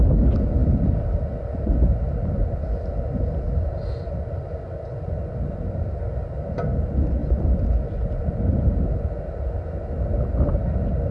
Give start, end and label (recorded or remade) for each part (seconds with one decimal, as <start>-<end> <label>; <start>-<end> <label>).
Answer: 0.0-11.1 recorded